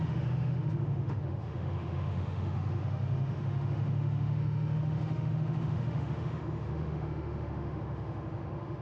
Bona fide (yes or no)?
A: no